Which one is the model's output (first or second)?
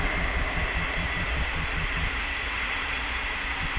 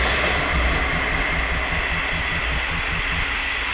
first